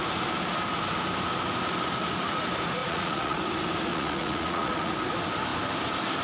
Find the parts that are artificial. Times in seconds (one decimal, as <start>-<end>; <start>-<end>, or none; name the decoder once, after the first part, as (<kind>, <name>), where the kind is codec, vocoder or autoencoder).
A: 2.8-3.4 (vocoder, Vocos); 3.9-4.9